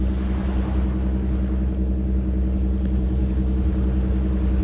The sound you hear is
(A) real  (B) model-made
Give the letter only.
A